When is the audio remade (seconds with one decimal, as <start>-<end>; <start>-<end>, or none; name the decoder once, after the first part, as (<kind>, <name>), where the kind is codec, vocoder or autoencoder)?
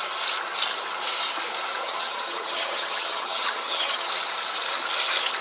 1.8-4.1 (vocoder, HiFi-GAN)